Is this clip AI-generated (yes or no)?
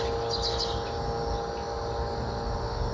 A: no